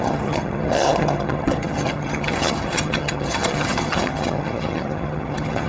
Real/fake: fake